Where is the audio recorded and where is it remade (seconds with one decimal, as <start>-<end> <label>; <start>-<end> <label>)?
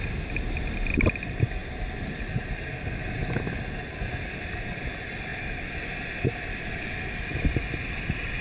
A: 0.0-1.6 recorded; 1.6-2.1 remade; 2.1-5.3 recorded; 5.3-8.4 remade